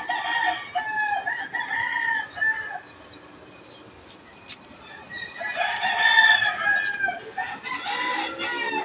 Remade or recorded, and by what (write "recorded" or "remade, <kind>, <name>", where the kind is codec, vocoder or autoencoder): recorded